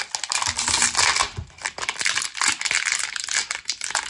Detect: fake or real real